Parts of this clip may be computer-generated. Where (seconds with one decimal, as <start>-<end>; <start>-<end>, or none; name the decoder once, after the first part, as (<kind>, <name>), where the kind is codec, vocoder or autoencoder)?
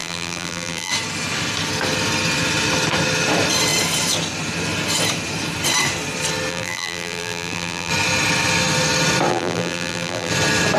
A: 0.0-0.9 (vocoder, BigVGAN v2); 6.5-7.9; 9.3-10.3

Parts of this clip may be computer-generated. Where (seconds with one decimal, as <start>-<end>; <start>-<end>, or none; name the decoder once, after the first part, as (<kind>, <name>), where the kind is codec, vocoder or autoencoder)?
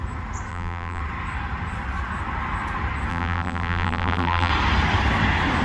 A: 0.5-1.0 (vocoder, BigVGAN v2); 3.1-4.5